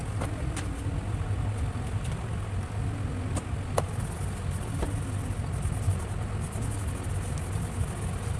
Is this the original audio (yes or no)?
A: yes